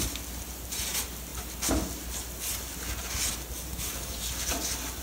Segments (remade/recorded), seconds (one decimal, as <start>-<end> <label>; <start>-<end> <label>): 0.0-3.7 recorded; 3.7-4.2 remade; 4.2-5.0 recorded